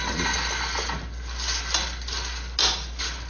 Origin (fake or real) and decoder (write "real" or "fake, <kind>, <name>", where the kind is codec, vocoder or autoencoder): real